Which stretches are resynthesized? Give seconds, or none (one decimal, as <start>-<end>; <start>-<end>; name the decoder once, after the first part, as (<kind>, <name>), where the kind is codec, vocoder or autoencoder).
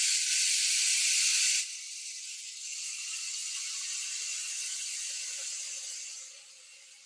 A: 1.3-2.2 (vocoder, Vocos); 4.4-5.1